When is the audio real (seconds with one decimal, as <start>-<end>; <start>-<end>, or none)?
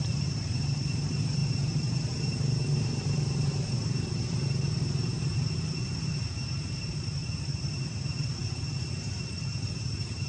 5.1-5.8; 7.2-7.8; 8.4-9.0